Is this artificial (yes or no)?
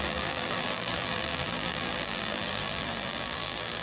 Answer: yes